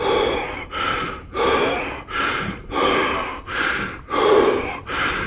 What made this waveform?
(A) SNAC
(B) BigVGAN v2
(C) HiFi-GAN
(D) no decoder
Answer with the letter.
D